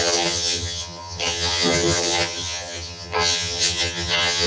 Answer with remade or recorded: remade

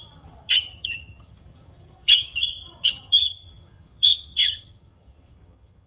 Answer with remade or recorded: remade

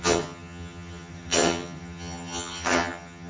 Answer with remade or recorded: remade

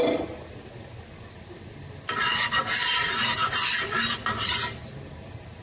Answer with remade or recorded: recorded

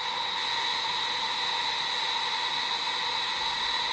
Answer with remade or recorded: recorded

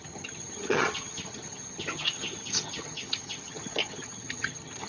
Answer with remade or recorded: remade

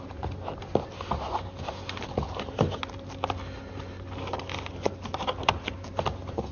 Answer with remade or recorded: recorded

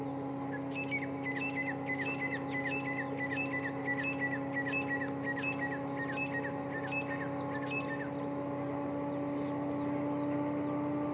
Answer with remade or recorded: recorded